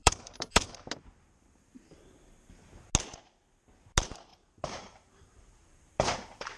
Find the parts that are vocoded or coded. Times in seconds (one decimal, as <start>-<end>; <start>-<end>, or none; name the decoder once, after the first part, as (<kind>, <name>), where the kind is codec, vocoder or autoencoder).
0.0-0.9 (vocoder, BigVGAN v2); 4.3-6.6